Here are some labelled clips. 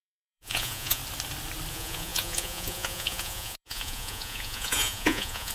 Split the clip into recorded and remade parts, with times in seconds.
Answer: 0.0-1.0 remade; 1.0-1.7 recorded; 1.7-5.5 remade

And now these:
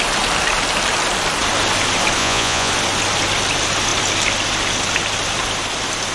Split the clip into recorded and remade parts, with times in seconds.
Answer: 0.0-2.2 recorded; 2.2-2.7 remade; 2.7-6.1 recorded

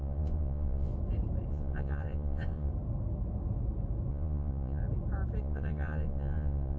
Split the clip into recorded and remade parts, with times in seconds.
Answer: 0.0-0.9 remade; 0.9-1.5 recorded; 1.5-2.7 remade; 2.7-4.1 recorded; 4.1-4.8 remade; 4.8-5.4 recorded; 5.4-6.8 remade

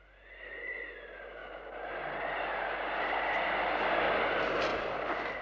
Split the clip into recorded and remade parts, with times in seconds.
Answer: 0.0-5.4 recorded

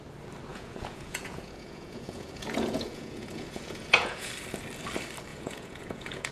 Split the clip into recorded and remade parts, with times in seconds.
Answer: 0.0-0.5 recorded; 0.5-4.3 remade; 4.3-5.3 recorded; 5.3-6.3 remade

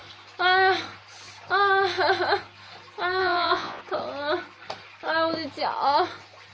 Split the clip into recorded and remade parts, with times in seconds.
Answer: 0.0-3.2 recorded; 3.2-3.8 remade; 3.8-6.5 recorded

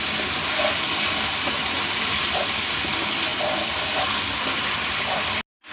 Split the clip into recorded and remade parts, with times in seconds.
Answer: 0.0-5.7 recorded

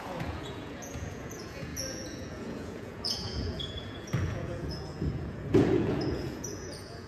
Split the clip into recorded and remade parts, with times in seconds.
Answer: 0.0-7.1 remade